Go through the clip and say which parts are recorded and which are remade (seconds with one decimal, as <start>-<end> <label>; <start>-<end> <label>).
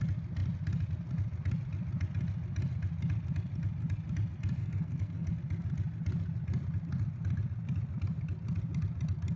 0.0-4.6 recorded; 4.6-5.3 remade; 5.3-9.4 recorded